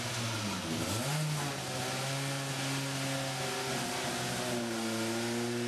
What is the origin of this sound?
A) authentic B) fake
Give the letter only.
A